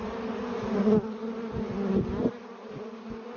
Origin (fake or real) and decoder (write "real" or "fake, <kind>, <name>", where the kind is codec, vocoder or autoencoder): real